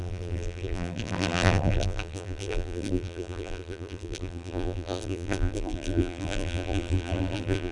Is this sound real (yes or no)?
no